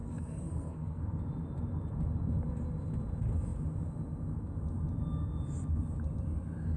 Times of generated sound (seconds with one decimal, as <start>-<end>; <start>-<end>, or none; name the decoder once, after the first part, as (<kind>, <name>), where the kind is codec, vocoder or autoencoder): 0.0-1.2 (codec, SNAC)